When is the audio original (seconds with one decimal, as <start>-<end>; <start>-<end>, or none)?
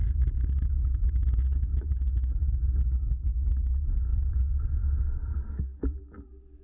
2.1-6.6